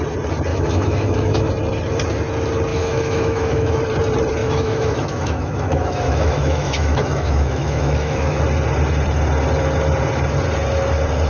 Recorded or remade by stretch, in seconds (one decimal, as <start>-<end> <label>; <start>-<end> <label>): 0.0-0.5 recorded; 0.5-1.5 remade; 1.5-2.7 recorded; 2.7-3.8 remade; 3.8-4.4 recorded; 4.4-8.4 remade; 8.4-11.3 recorded